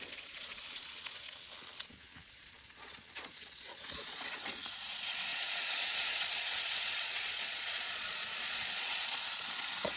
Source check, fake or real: fake